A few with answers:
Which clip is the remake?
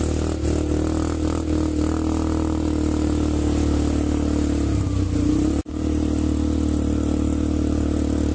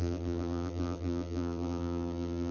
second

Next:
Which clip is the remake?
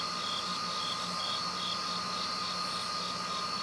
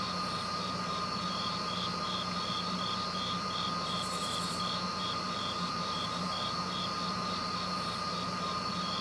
second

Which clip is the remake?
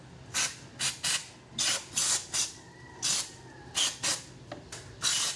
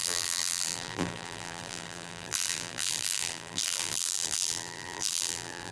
second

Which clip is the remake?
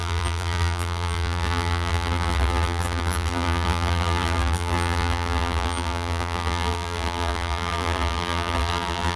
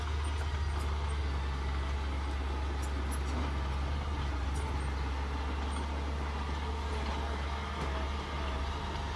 first